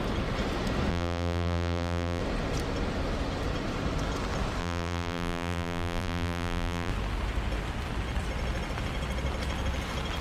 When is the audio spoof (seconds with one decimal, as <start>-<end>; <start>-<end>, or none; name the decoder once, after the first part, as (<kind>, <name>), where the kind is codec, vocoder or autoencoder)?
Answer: 0.9-2.2 (vocoder, BigVGAN v2); 4.6-6.9